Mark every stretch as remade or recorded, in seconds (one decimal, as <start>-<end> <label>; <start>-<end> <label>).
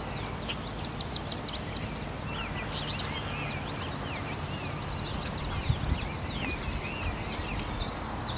0.0-8.4 recorded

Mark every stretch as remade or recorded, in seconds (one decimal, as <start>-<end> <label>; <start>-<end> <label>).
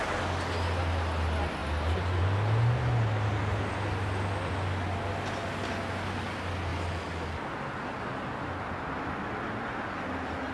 0.0-10.5 recorded